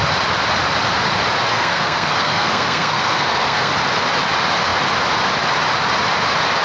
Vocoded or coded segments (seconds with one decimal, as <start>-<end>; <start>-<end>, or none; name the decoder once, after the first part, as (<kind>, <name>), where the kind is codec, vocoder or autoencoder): 1.5-3.7 (codec, SNAC)